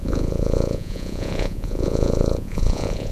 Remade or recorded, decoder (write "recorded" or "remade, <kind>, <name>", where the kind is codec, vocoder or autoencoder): remade, vocoder, Vocos